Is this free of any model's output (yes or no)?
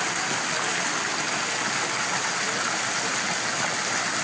yes